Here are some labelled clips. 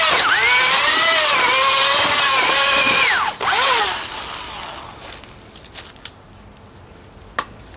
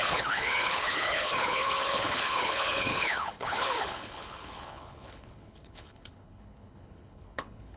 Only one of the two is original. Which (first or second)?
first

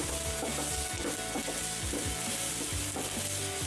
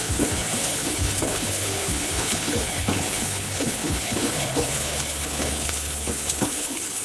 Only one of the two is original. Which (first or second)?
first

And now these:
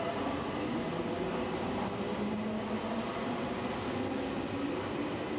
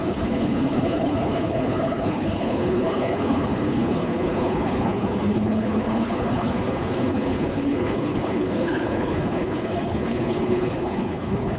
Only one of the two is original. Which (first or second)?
first